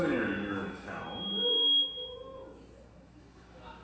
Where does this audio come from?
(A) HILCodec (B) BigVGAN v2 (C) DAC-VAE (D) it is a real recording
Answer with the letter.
C